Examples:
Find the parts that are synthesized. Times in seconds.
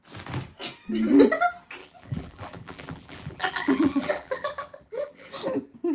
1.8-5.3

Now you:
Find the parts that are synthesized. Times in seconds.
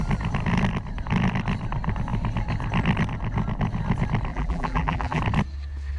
4.3-5.2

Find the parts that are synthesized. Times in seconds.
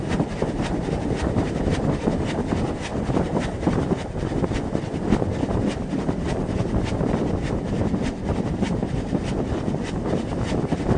2.9-4.4; 8.8-9.4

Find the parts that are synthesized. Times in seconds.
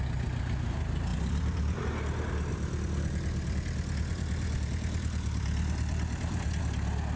1.1-1.8; 2.5-6.6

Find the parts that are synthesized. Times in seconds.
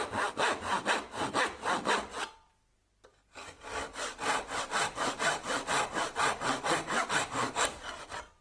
1.4-2.5